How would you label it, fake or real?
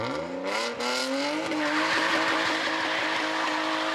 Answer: real